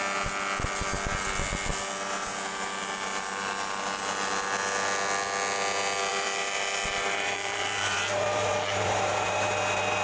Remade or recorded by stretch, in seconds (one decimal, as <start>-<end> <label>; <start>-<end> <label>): 0.0-6.1 recorded; 6.1-9.3 remade; 9.3-10.0 recorded